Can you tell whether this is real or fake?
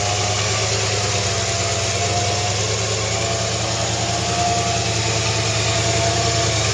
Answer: real